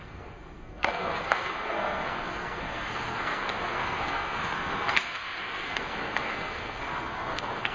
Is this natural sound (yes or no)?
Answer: no